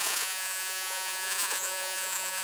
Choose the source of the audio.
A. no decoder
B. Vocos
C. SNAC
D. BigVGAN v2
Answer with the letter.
B